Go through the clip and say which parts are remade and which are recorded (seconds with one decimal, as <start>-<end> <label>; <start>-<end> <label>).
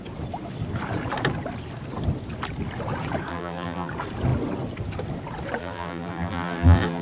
0.0-3.3 recorded; 3.3-3.9 remade; 3.9-5.6 recorded; 5.6-7.0 remade